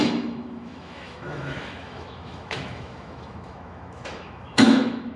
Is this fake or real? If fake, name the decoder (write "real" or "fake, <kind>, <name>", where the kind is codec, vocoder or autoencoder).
fake, autoencoder, DAC-VAE